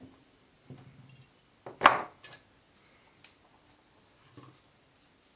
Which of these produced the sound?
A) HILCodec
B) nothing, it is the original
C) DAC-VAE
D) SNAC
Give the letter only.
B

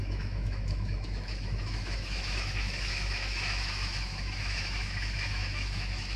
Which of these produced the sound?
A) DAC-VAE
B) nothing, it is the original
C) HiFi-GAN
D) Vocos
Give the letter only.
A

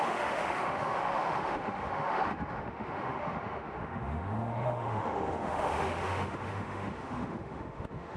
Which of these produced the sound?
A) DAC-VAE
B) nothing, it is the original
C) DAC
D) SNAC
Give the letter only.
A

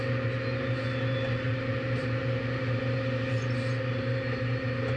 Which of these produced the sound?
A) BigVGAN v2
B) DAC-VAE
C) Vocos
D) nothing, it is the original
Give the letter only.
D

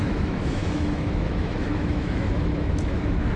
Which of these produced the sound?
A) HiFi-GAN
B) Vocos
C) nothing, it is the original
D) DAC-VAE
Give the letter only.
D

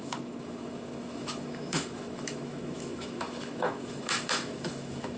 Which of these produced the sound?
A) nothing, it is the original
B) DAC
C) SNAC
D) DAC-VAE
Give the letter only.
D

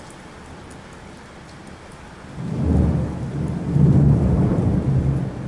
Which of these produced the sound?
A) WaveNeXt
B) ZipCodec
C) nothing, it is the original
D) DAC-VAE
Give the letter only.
C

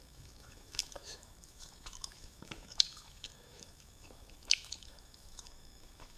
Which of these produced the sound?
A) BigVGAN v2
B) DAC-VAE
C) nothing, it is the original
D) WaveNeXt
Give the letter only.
B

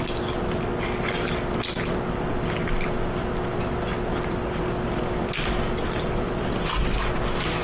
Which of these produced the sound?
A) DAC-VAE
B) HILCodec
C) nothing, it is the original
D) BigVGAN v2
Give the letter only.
C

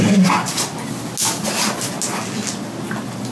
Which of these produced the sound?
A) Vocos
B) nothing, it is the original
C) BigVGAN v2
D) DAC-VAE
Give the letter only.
B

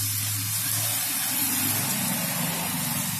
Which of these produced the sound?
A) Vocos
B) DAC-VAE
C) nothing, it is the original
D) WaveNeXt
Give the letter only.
C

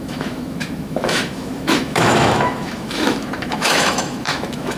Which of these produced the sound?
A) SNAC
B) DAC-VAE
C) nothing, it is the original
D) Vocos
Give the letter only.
B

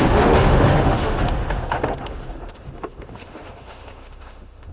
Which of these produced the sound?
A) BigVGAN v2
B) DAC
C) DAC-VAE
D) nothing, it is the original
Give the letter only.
C